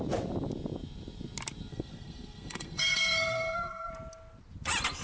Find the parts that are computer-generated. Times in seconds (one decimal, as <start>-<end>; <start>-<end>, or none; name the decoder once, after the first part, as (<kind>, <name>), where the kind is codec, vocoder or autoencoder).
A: 1.7-3.9 (codec, SNAC)